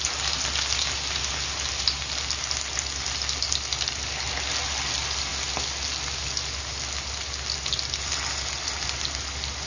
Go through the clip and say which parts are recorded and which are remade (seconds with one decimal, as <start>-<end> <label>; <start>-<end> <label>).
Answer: 0.0-9.7 recorded

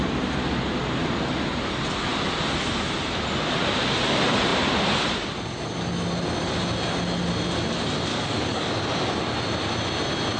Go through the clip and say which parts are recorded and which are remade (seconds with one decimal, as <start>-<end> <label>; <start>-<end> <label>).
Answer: 0.0-8.1 recorded; 8.1-8.7 remade; 8.7-10.4 recorded

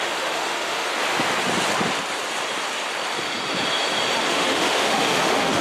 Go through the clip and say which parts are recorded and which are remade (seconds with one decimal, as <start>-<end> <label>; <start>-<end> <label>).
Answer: 0.0-0.9 remade; 0.9-4.3 recorded; 4.3-5.6 remade

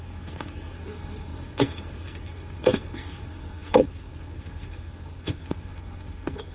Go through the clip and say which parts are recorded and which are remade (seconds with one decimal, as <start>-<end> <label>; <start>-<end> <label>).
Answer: 0.0-6.5 remade